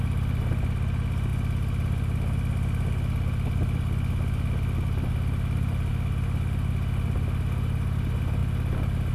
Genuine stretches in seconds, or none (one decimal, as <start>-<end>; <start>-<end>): 0.0-9.1